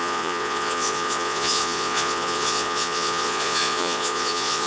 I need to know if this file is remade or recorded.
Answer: remade